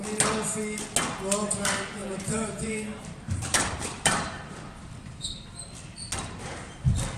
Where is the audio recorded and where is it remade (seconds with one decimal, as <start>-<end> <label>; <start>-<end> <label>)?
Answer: 0.0-2.0 recorded; 2.0-4.6 remade; 4.6-7.2 recorded